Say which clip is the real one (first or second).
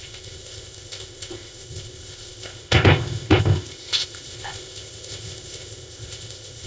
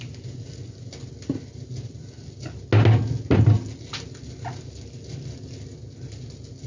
second